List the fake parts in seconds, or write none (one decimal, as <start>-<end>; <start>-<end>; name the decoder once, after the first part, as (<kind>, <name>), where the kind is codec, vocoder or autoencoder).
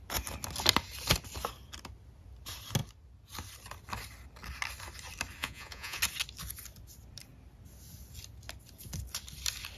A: 5.4-6.0 (vocoder, Vocos)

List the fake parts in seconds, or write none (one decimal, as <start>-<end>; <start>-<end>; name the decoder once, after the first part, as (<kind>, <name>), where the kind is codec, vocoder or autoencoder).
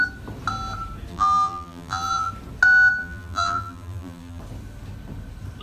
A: 1.1-2.3 (vocoder, BigVGAN v2); 3.0-4.4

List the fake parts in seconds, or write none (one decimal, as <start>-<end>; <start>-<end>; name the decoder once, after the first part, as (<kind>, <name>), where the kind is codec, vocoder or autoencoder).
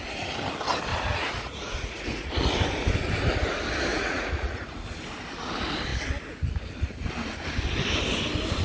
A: 0.9-2.3 (vocoder, Vocos); 3.9-4.8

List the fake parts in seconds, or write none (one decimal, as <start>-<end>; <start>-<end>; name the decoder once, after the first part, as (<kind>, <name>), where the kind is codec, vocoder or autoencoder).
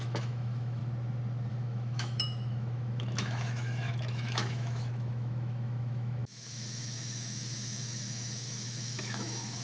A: 0.0-0.8 (autoencoder, DAC-VAE); 1.5-9.6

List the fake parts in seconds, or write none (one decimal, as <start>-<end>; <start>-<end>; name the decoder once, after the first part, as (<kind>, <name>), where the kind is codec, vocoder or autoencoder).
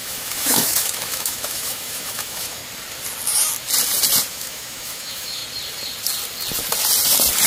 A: 0.0-2.6 (autoencoder, DAC-VAE); 4.3-5.4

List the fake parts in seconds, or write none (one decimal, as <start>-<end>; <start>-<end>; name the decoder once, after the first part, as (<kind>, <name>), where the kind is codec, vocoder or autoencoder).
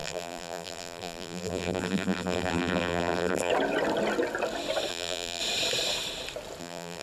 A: 0.0-3.5 (vocoder, BigVGAN v2); 4.9-5.4; 6.6-7.0